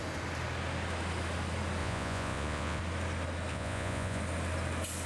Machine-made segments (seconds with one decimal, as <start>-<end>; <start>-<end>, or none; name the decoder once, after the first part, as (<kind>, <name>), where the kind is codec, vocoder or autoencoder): 1.8-2.8 (vocoder, Vocos); 3.5-4.2